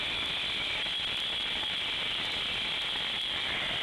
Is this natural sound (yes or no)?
no